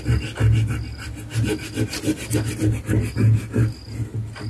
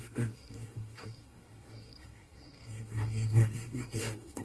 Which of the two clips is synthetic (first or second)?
second